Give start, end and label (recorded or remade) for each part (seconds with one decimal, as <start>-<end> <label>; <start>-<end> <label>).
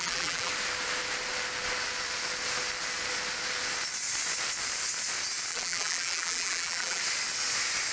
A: 0.0-0.5 remade; 0.5-5.5 recorded; 5.5-7.0 remade; 7.0-7.9 recorded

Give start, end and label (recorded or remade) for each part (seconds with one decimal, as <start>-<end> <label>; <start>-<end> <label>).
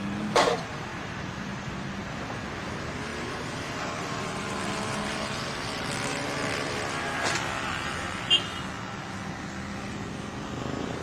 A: 0.0-0.9 recorded; 0.9-2.0 remade; 2.0-3.1 recorded; 3.1-7.2 remade; 7.2-11.0 recorded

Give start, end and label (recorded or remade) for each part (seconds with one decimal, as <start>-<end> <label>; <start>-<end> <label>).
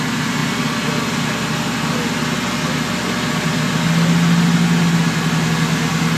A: 0.0-6.2 recorded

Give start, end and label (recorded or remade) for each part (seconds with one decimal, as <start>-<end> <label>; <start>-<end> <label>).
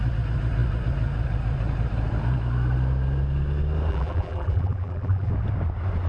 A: 0.0-3.9 recorded; 3.9-5.3 remade; 5.3-6.1 recorded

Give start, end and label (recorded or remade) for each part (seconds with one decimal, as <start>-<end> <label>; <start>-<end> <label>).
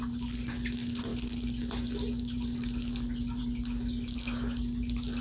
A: 0.0-5.2 recorded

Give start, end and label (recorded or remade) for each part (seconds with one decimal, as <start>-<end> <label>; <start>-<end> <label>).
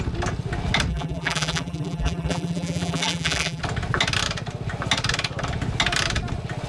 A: 0.0-0.9 recorded; 0.9-3.6 remade; 3.6-6.7 recorded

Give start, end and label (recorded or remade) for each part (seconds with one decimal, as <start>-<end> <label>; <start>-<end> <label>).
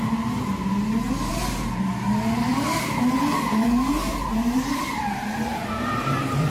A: 0.0-1.3 recorded; 1.3-1.9 remade; 1.9-2.5 recorded; 2.5-6.5 remade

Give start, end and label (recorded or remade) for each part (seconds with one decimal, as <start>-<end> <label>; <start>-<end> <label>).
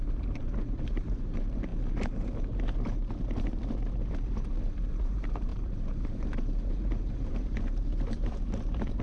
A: 0.0-1.7 remade; 1.7-4.3 recorded; 4.3-9.0 remade